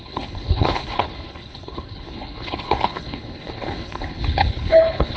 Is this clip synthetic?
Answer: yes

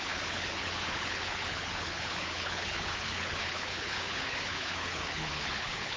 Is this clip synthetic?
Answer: yes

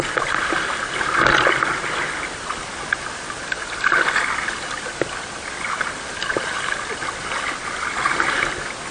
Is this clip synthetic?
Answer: no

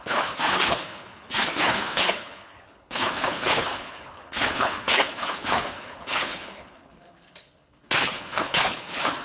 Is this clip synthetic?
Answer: yes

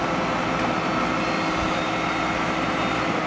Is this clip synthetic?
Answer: no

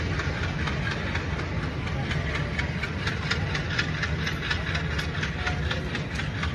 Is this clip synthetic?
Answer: no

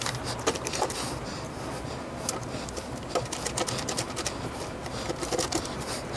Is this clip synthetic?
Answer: no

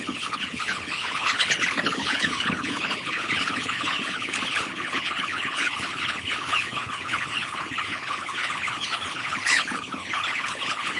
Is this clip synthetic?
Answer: yes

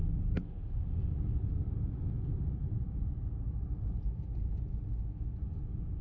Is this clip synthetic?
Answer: no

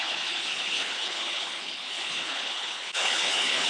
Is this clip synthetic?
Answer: yes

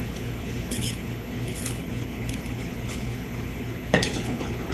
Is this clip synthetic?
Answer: yes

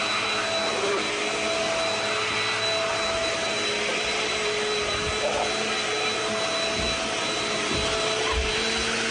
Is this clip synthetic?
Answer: no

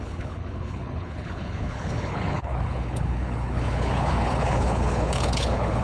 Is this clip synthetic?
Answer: yes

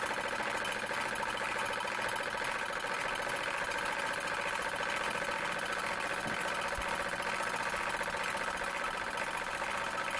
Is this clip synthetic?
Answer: no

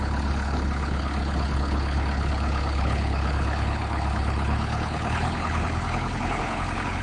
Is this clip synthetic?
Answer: yes